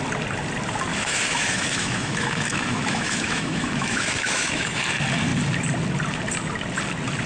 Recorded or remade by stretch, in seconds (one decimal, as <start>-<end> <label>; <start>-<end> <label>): 0.0-0.9 recorded; 0.9-4.8 remade; 4.8-7.3 recorded